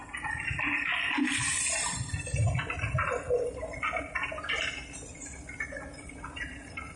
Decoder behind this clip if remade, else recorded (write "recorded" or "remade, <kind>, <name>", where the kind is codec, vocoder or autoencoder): recorded